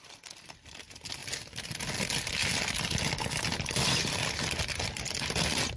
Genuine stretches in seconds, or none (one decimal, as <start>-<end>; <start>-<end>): 0.0-5.8